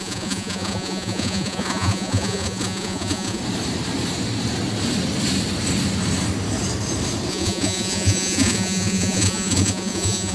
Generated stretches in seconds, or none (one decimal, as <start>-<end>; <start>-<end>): 0.0-3.4; 7.3-10.3